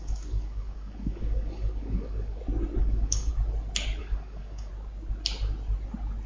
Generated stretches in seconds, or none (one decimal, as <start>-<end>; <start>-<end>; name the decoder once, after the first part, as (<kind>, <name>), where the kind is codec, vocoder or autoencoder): 0.0-2.4 (codec, DAC); 2.8-3.3; 4.0-4.7